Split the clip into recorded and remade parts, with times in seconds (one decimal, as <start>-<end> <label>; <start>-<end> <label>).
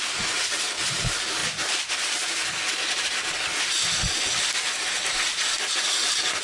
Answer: 0.0-6.4 recorded